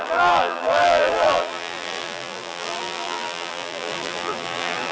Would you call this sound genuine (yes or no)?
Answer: no